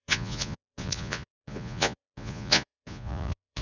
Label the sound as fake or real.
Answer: fake